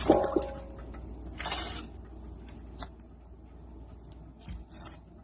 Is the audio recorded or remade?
recorded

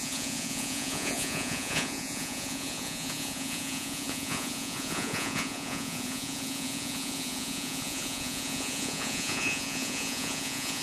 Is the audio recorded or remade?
remade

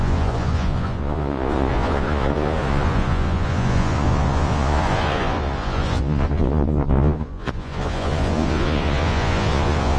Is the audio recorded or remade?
remade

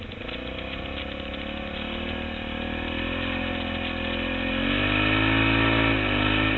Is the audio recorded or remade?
recorded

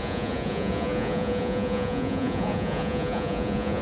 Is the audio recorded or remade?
remade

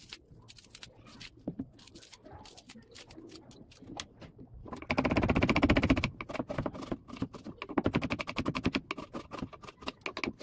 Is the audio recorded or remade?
recorded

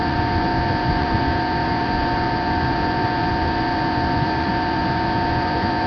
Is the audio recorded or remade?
remade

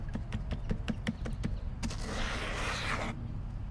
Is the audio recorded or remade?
recorded